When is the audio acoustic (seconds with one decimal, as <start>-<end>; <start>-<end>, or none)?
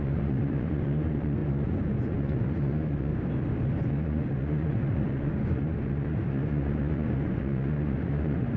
3.1-3.9